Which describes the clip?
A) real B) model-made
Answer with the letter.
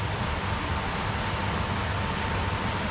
A